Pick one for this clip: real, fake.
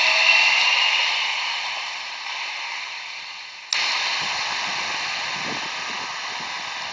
real